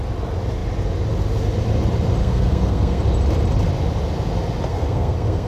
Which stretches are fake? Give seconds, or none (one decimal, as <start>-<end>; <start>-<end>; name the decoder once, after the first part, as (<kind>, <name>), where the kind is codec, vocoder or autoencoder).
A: 2.2-3.0 (codec, SNAC); 4.7-5.5